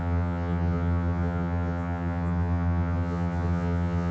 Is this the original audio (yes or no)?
no